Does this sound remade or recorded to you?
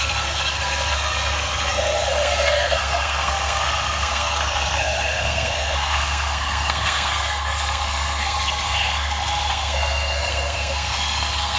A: remade